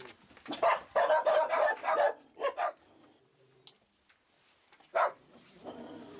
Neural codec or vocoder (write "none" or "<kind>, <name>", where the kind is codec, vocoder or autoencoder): none